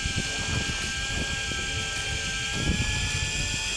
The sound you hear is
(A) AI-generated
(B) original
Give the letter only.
B